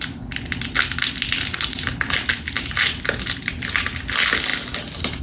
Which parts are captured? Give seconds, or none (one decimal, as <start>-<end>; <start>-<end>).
0.0-5.2